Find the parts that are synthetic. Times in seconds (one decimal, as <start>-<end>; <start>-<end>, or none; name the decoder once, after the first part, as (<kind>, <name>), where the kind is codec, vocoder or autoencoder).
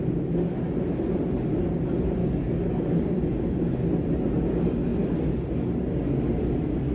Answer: 2.2-2.8 (codec, DAC)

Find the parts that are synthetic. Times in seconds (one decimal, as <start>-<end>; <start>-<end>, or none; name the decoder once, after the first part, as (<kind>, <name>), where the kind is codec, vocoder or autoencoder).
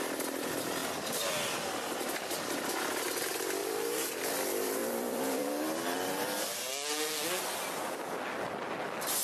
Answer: 3.6-4.2 (vocoder, BigVGAN v2); 4.8-6.7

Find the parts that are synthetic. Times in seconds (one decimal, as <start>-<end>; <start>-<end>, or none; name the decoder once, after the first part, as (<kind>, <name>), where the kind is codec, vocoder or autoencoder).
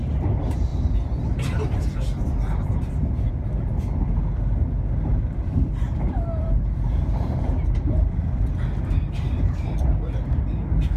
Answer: 5.1-8.5 (vocoder, BigVGAN v2)